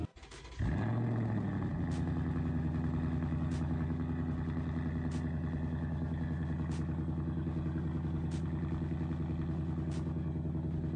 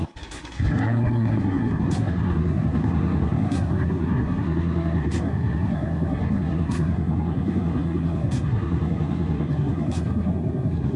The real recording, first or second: first